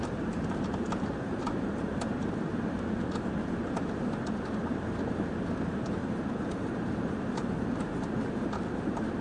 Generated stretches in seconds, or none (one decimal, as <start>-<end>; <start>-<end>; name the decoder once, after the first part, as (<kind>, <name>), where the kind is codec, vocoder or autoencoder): 0.0-9.2 (vocoder, BigVGAN v2)